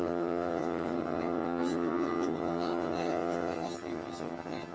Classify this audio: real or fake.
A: fake